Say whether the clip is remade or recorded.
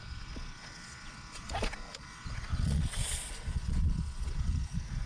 remade